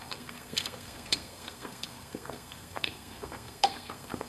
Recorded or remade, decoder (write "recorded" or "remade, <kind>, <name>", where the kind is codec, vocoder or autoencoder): remade, codec, SNAC